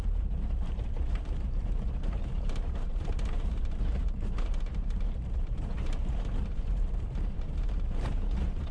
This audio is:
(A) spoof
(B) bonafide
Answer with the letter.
A